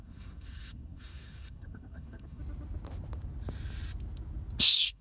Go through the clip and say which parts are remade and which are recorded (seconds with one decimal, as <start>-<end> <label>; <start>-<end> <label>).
0.0-2.4 remade; 2.4-4.6 recorded; 4.6-5.0 remade